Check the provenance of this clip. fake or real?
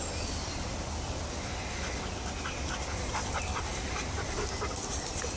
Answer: real